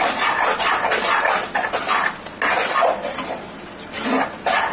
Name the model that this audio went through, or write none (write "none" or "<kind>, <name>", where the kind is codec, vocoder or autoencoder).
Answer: none